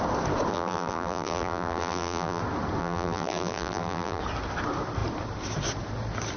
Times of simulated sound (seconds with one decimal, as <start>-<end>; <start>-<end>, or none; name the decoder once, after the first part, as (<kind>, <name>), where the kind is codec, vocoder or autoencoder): 0.5-2.4 (vocoder, BigVGAN v2); 2.8-4.2